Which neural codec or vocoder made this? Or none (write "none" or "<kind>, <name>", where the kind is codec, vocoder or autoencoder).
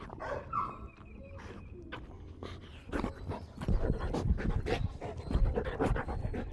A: none